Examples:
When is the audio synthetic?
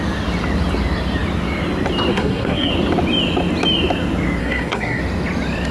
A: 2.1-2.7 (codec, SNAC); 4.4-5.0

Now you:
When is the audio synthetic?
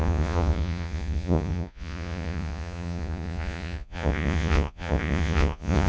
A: 0.0-5.9 (vocoder, Vocos)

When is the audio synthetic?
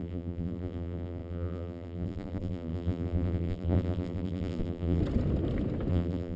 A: 0.0-5.0 (vocoder, BigVGAN v2); 5.9-6.4